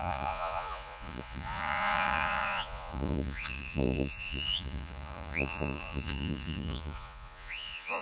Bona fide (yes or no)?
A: no